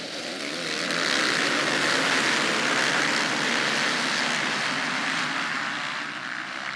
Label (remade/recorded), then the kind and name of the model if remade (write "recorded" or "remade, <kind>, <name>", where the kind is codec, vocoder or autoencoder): recorded